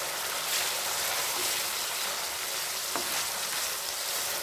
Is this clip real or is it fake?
fake